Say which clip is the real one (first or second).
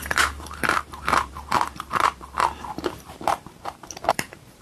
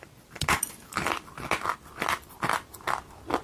second